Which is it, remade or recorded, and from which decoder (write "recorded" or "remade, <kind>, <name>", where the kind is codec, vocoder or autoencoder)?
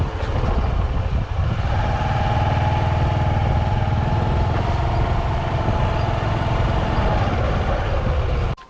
recorded